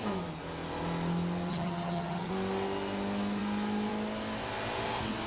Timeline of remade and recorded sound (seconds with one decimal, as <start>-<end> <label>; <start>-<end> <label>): 0.0-1.5 recorded; 1.5-2.3 remade; 2.3-5.3 recorded